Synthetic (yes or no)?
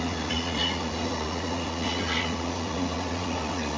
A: yes